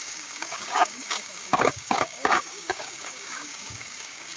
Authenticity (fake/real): fake